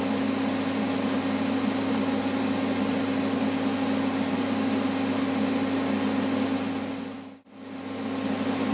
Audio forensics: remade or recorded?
recorded